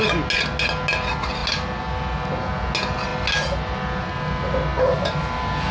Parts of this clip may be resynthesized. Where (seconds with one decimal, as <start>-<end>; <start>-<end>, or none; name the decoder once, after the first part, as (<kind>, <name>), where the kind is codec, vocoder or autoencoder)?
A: none